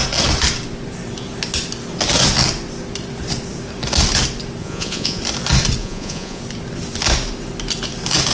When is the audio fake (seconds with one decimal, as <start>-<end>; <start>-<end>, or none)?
4.6-5.2; 5.8-6.4